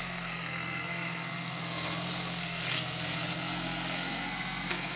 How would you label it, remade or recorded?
remade